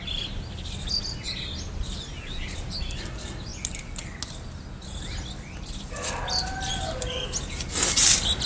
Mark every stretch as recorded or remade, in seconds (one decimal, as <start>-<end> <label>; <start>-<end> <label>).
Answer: 0.0-8.5 recorded